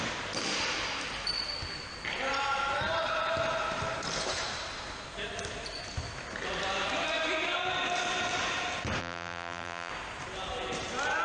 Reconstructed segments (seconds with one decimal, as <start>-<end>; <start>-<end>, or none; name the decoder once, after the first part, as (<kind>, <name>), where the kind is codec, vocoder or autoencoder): 9.0-9.9 (vocoder, BigVGAN v2)